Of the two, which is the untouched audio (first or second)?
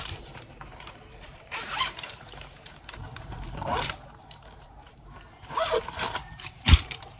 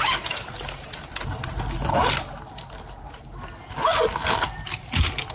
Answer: second